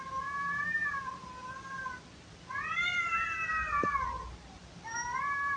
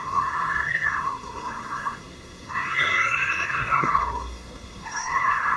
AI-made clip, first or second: second